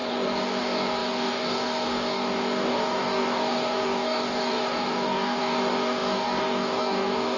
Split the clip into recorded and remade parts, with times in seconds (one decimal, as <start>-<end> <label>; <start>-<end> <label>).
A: 0.0-7.4 remade